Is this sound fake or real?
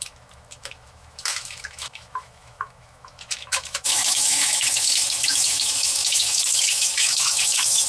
fake